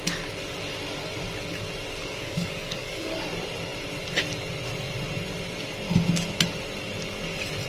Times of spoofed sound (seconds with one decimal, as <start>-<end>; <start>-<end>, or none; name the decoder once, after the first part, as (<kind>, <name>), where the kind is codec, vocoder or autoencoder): 2.0-3.2 (codec, DAC)